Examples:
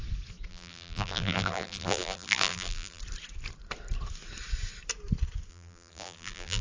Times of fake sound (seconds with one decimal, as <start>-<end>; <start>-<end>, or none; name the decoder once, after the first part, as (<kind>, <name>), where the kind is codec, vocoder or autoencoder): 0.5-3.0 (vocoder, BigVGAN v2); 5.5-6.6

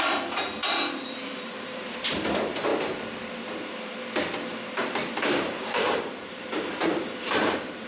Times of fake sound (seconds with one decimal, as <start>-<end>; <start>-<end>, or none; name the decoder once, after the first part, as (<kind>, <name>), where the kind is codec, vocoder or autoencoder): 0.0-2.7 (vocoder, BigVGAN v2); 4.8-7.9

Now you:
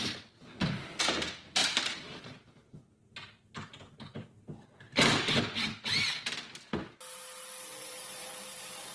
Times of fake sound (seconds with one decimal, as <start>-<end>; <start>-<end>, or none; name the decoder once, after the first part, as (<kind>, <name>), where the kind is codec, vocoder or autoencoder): 1.6-5.3 (vocoder, BigVGAN v2); 7.7-8.9